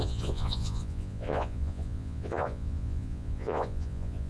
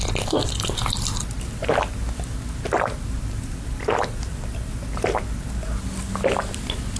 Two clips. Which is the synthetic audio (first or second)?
first